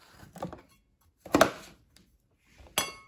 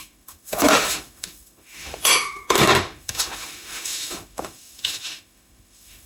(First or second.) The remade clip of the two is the second